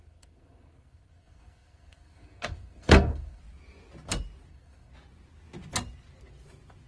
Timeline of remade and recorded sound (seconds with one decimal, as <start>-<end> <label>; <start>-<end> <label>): 0.0-3.4 remade; 3.4-4.5 recorded; 4.5-4.9 remade; 4.9-6.9 recorded